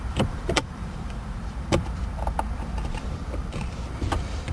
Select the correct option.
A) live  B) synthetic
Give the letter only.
B